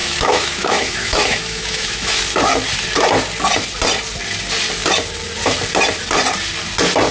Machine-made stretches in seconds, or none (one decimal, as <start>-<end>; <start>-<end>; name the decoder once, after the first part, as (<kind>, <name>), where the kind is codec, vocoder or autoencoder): 0.0-2.2 (autoencoder, DAC-VAE)